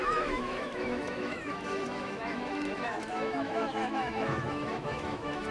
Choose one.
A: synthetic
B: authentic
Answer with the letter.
A